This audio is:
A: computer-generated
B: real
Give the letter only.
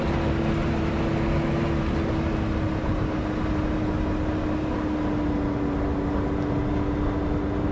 B